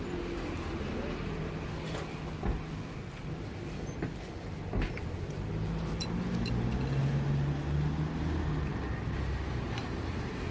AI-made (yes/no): no